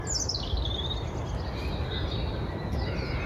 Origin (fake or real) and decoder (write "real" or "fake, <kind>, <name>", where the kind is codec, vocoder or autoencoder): real